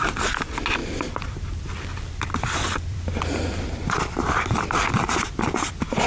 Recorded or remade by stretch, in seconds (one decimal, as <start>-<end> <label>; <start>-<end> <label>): 0.0-0.8 recorded; 0.8-4.5 remade; 4.5-6.1 recorded